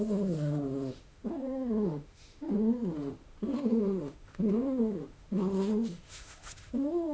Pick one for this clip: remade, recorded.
remade